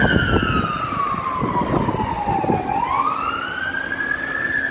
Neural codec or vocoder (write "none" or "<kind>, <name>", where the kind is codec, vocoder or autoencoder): none